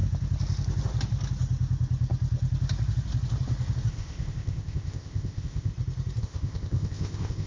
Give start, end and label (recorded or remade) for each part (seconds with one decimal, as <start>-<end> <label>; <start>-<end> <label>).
0.0-3.9 recorded; 3.9-5.7 remade; 5.7-6.2 recorded; 6.2-7.5 remade